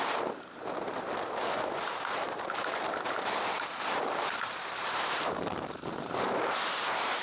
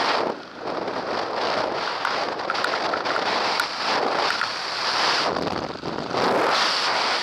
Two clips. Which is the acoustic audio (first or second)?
second